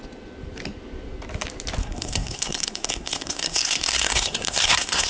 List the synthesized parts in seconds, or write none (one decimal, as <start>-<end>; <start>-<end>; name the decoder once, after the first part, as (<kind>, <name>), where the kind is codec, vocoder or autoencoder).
1.8-5.1 (codec, SNAC)